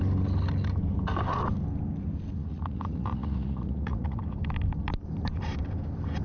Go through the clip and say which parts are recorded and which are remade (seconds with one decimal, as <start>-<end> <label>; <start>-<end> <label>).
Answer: 0.0-2.4 recorded; 2.4-4.2 remade; 4.2-6.2 recorded